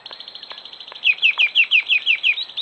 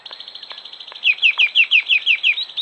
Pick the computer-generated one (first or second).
first